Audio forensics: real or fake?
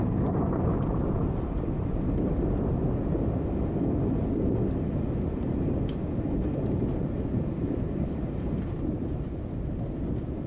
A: real